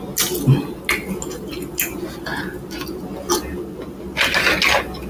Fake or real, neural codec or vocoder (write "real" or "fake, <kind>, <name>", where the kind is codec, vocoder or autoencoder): real